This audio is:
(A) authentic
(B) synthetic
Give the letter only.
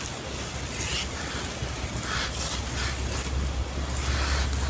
A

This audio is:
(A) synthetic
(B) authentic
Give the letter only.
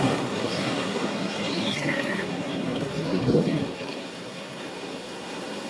A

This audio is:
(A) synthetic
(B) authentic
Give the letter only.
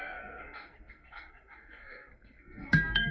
A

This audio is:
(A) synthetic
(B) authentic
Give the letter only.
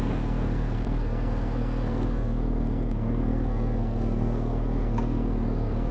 A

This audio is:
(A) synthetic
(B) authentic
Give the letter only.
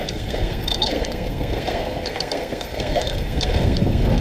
A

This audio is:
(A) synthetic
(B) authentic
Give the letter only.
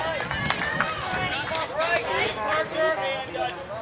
B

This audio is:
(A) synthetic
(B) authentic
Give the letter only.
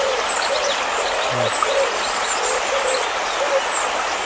B